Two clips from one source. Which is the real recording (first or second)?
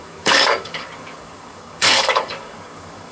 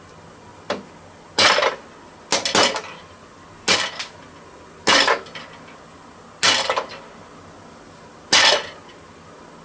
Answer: second